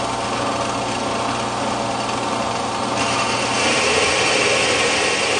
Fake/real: real